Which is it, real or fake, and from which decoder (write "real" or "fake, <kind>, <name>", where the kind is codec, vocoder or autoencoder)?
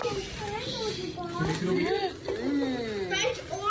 real